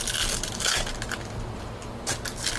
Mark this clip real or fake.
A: real